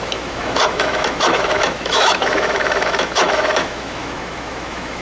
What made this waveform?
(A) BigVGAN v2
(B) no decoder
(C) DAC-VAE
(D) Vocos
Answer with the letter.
C